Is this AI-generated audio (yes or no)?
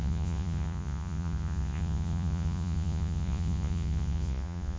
yes